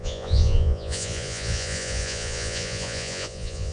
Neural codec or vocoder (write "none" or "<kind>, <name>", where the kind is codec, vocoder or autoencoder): vocoder, Vocos